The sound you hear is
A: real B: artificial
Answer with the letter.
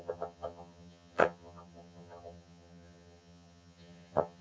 B